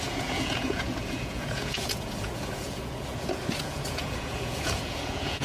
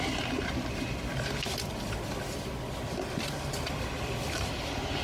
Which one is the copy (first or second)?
first